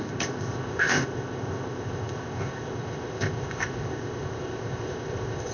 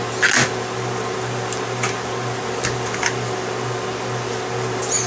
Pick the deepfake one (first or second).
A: first